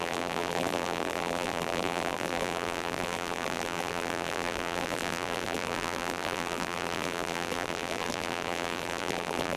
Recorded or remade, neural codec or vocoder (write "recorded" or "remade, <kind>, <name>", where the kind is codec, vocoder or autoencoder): remade, vocoder, BigVGAN v2